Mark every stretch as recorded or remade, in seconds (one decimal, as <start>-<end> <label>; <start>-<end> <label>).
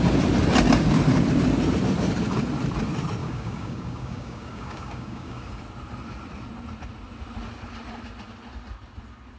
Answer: 0.0-3.2 recorded; 3.2-5.6 remade; 5.6-9.4 recorded